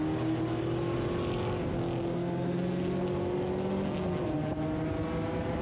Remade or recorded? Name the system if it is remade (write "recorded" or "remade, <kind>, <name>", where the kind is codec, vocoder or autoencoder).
recorded